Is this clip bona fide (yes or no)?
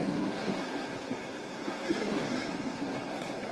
no